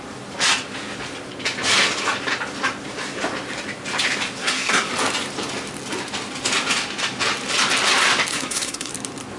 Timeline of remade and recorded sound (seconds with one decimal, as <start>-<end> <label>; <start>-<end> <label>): 0.0-4.4 recorded; 4.4-4.9 remade; 4.9-8.3 recorded; 8.3-8.9 remade; 8.9-9.4 recorded